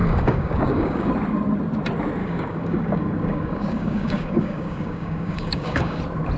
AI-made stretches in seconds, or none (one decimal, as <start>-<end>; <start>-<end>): 0.0-1.1; 2.2-6.0